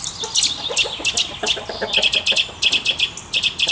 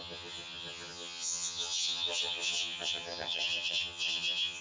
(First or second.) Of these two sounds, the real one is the first